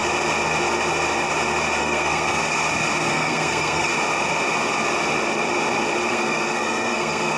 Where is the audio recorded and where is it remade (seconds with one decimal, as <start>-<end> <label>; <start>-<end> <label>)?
0.0-1.8 recorded; 1.8-2.4 remade; 2.4-3.1 recorded; 3.1-3.9 remade; 3.9-6.1 recorded; 6.1-7.4 remade